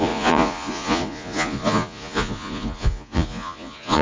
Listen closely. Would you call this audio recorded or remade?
remade